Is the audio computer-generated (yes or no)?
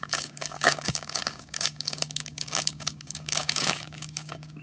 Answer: yes